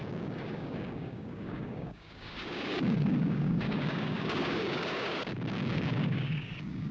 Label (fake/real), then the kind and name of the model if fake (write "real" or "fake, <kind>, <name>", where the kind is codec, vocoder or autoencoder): fake, codec, DAC